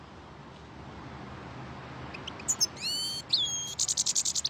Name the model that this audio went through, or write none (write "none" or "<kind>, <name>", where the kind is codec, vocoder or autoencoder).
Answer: none